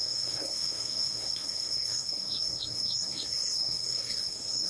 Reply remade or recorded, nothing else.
remade